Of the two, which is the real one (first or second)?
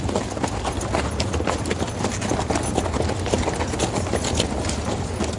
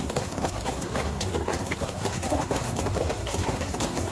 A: first